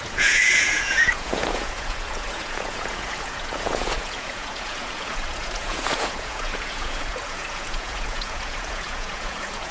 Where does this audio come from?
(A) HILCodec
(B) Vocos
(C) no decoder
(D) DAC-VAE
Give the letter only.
B